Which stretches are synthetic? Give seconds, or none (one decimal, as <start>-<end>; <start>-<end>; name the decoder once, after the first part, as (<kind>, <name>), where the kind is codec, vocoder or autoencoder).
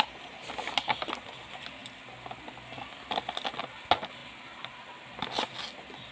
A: none